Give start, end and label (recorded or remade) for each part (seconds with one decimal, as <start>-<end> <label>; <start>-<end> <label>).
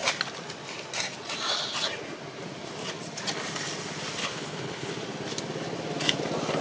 0.0-4.2 recorded; 4.2-4.9 remade; 4.9-6.6 recorded